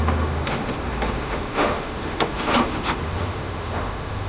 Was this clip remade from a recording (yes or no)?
yes